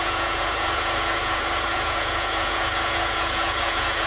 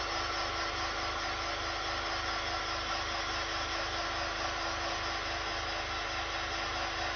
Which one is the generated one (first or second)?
first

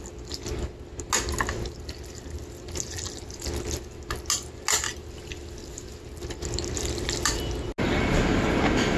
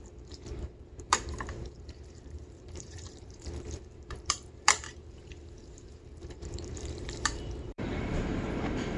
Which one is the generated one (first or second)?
second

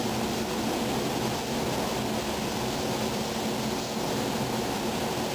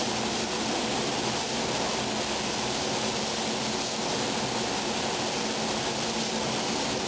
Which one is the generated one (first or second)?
second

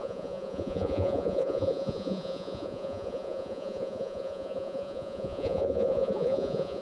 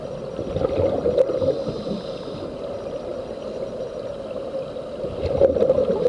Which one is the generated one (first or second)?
first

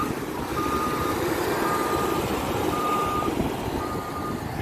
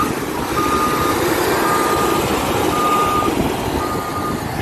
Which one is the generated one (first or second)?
first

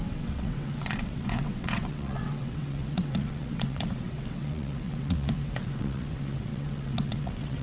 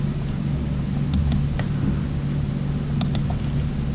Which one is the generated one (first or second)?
first